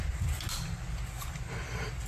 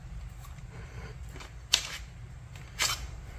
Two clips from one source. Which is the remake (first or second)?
second